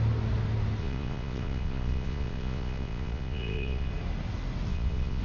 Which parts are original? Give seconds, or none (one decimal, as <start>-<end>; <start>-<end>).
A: 0.0-0.8; 3.9-4.7